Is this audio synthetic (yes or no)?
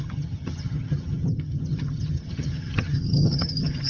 yes